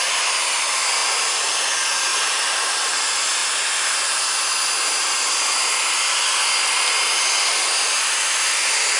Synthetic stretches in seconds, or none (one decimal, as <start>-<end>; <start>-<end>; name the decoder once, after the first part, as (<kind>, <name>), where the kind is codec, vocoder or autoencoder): 2.1-3.0 (vocoder, BigVGAN v2)